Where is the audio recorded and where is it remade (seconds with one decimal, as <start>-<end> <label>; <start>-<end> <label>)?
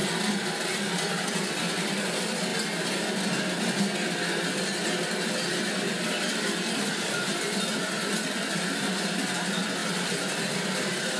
0.0-2.5 remade; 2.5-5.7 recorded; 5.7-9.8 remade; 9.8-10.4 recorded; 10.4-11.2 remade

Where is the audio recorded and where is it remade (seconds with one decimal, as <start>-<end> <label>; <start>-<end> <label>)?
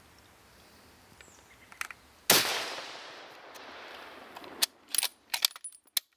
0.0-2.5 recorded; 2.5-4.6 remade; 4.6-6.2 recorded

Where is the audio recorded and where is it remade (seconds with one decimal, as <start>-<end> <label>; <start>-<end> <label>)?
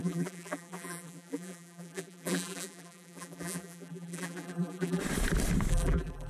0.0-5.0 remade; 5.0-5.7 recorded; 5.7-6.3 remade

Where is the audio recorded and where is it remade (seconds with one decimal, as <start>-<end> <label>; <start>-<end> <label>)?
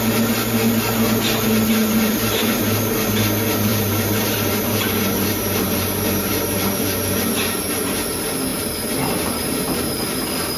0.0-1.8 recorded; 1.8-2.8 remade; 2.8-3.7 recorded; 3.7-7.7 remade; 7.7-8.5 recorded; 8.5-10.0 remade; 10.0-10.6 recorded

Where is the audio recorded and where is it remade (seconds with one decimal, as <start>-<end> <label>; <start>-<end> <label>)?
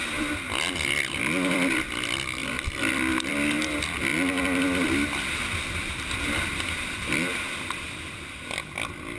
0.0-4.1 remade; 4.1-5.7 recorded; 5.7-7.3 remade; 7.3-9.2 recorded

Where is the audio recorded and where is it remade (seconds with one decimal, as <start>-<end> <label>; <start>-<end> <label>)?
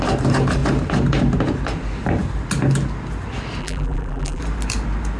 0.0-3.6 recorded; 3.6-4.4 remade; 4.4-5.2 recorded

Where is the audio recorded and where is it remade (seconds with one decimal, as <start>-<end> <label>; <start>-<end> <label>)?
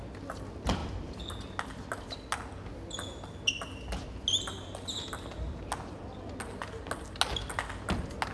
0.0-8.3 recorded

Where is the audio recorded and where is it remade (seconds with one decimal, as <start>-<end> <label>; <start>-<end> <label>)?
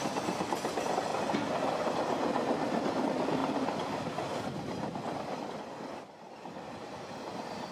0.0-3.4 recorded; 3.4-7.7 remade